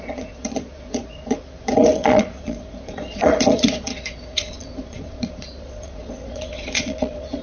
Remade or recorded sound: remade